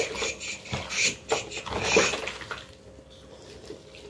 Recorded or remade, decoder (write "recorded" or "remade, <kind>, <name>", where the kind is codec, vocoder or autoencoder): recorded